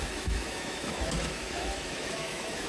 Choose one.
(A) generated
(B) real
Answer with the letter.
A